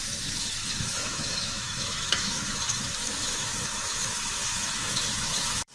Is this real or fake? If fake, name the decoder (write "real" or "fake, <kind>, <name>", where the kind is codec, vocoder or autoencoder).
fake, autoencoder, DAC-VAE